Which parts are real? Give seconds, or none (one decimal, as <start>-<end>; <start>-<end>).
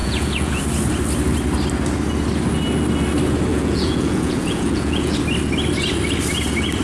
0.6-3.5; 5.2-6.8